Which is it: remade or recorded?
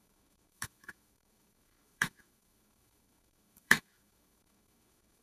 remade